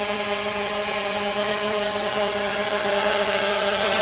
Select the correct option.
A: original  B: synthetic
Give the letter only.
B